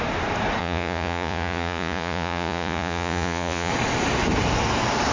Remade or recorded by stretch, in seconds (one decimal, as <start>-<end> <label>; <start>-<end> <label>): 0.0-0.6 recorded; 0.6-3.7 remade; 3.7-5.1 recorded